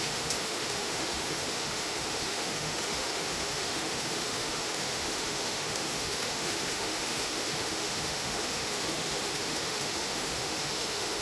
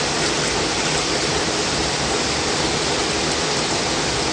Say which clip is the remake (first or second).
first